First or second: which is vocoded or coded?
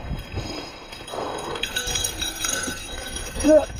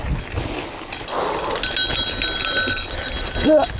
first